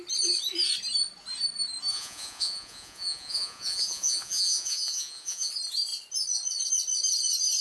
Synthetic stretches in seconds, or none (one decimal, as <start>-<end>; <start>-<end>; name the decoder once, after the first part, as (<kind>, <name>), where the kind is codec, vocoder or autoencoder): 1.9-5.5 (vocoder, Vocos)